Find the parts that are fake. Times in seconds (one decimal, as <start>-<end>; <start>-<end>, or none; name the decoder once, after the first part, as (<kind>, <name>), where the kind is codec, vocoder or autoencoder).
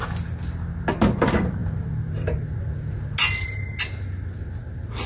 none